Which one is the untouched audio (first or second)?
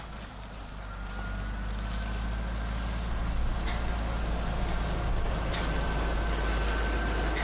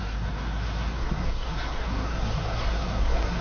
first